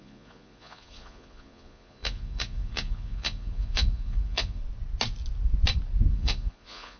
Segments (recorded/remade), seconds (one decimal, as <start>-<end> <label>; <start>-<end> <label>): 0.0-4.6 remade; 4.6-6.1 recorded; 6.1-7.0 remade

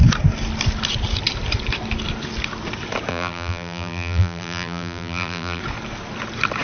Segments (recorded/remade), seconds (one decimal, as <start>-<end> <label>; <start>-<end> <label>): 0.0-3.1 recorded; 3.1-5.6 remade; 5.6-6.6 recorded

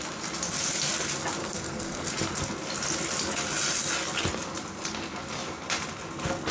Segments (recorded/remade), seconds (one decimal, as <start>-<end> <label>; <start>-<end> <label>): 0.0-1.4 recorded; 1.4-2.1 remade; 2.1-6.5 recorded